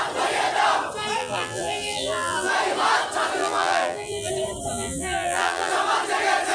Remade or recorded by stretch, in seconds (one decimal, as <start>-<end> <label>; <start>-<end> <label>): 0.0-1.2 recorded; 1.2-2.5 remade; 2.5-3.4 recorded; 3.4-4.3 remade; 4.3-4.7 recorded; 4.7-5.7 remade; 5.7-6.5 recorded